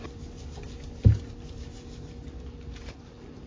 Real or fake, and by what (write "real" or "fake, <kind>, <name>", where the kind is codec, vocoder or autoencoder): fake, vocoder, BigVGAN v2